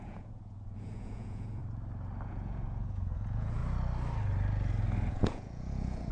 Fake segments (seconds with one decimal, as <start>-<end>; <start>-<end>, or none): 0.0-1.6; 2.3-3.6; 5.1-6.1